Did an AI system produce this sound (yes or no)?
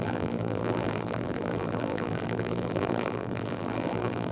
yes